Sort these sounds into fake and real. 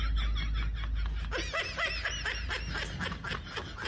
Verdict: real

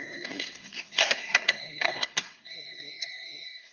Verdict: fake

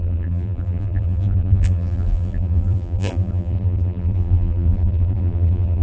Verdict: fake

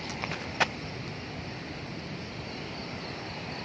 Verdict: real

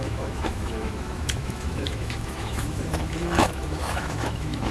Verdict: fake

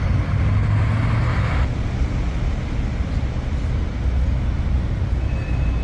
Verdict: real